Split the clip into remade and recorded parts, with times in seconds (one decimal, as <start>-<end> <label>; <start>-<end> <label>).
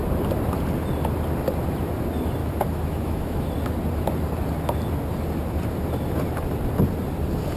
0.0-2.4 recorded; 2.4-3.5 remade; 3.5-7.6 recorded